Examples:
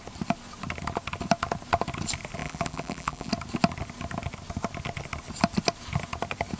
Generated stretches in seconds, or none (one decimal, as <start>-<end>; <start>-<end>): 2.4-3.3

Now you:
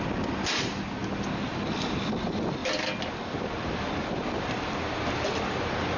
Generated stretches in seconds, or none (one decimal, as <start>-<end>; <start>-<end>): none

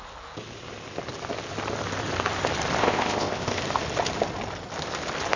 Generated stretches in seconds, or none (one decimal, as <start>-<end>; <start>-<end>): 2.8-3.6